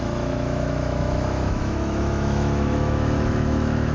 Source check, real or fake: fake